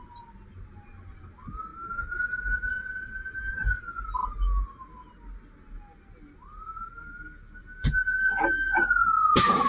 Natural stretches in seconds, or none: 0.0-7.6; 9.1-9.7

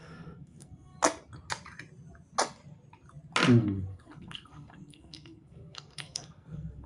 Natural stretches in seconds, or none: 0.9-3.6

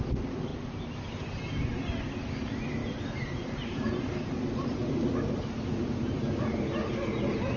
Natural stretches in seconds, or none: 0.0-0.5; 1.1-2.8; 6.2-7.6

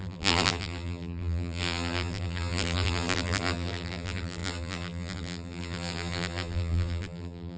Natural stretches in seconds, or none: none